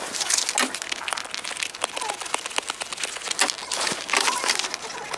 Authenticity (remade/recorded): recorded